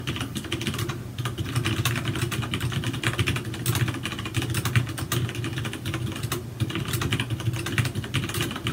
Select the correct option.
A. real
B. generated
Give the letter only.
A